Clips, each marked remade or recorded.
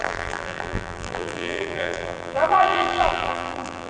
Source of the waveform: remade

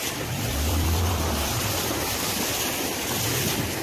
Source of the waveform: remade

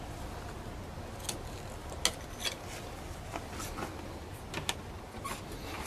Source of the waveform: recorded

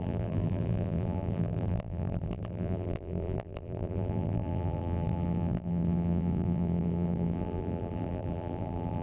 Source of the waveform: remade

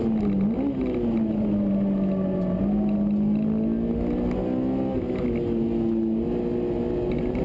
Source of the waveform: recorded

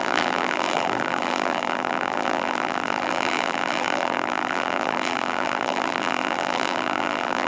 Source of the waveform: remade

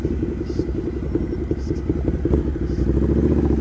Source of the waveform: recorded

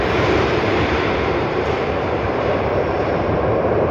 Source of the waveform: remade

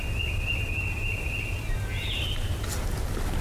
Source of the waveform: recorded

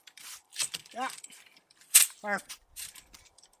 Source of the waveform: remade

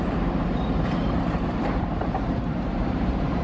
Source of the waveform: remade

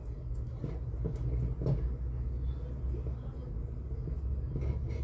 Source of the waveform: recorded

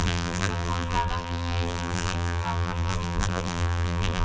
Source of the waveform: remade